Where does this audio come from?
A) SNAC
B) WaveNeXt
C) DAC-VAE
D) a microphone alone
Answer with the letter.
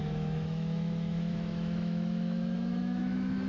C